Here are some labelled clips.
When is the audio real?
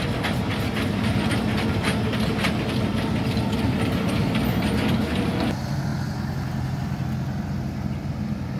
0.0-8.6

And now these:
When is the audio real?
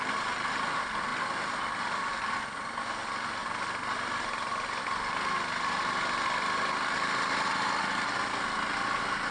0.0-9.3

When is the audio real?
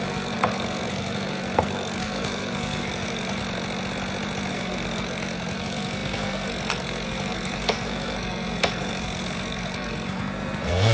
3.4-4.5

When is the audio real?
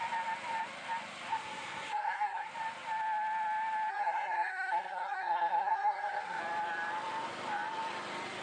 0.0-1.3; 2.5-3.9; 6.4-8.4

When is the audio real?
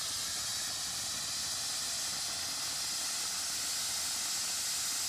0.0-5.1